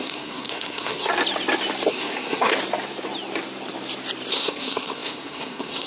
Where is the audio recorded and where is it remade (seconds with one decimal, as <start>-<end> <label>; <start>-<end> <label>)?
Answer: 0.0-1.1 remade; 1.1-1.9 recorded; 1.9-2.5 remade; 2.5-4.3 recorded; 4.3-5.9 remade